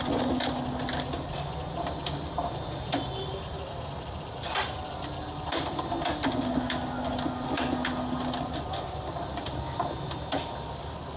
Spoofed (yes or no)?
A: no